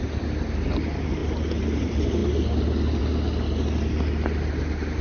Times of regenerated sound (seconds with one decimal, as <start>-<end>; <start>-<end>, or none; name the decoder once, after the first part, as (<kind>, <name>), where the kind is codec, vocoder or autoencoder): none